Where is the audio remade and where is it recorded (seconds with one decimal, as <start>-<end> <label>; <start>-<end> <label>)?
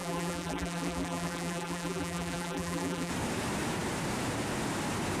0.0-3.1 remade; 3.1-5.2 recorded